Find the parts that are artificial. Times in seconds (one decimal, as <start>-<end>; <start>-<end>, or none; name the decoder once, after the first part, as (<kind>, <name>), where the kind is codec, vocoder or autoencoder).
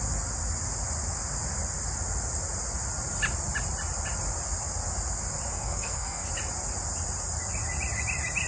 5.5-6.3 (codec, SNAC)